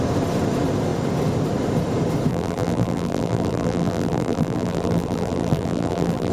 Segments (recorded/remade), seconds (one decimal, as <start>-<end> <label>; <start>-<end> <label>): 0.0-2.3 recorded; 2.3-6.3 remade